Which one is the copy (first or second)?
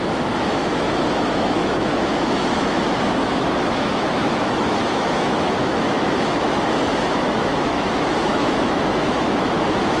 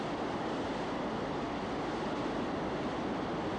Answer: first